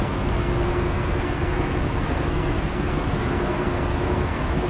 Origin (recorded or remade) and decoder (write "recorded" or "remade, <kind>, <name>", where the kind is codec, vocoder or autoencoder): remade, codec, SNAC